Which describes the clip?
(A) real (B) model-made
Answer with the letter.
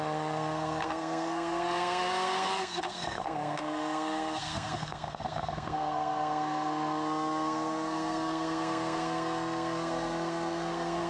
B